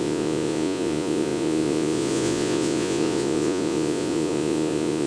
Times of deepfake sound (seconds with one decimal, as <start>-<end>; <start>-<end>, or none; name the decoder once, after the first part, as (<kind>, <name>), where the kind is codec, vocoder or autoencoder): 0.0-5.1 (vocoder, Vocos)